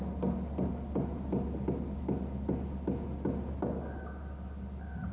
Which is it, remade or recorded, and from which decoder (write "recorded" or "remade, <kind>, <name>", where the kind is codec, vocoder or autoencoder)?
recorded